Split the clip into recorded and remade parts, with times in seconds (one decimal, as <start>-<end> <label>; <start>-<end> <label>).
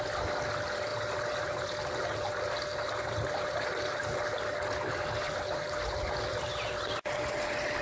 0.0-7.8 recorded